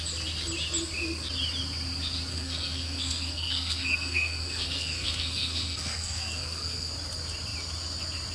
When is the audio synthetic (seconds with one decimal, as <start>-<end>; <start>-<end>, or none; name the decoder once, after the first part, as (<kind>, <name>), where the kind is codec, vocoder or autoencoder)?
2.3-6.9 (codec, SNAC)